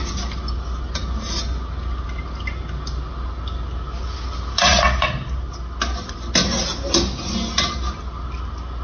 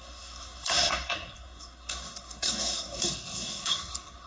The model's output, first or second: second